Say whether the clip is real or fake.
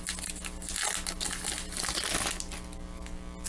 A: real